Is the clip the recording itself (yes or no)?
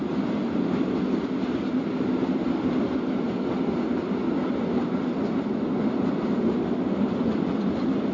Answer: yes